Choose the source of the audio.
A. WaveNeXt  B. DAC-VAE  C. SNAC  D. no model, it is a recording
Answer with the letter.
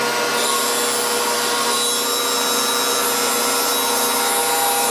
D